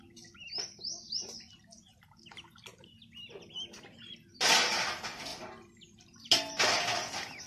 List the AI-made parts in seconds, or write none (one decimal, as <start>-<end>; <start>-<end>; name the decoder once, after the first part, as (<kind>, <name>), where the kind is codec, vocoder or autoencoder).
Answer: none